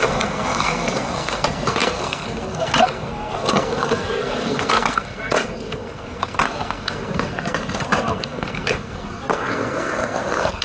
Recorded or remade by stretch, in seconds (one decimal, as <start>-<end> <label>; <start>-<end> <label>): 0.0-10.6 remade